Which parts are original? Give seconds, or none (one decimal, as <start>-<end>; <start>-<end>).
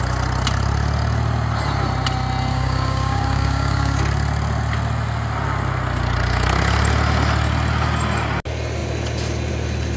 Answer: 0.0-2.5; 4.0-10.0